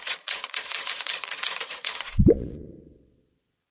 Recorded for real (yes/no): no